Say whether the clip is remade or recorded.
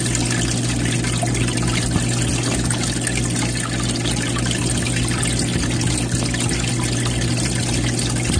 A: recorded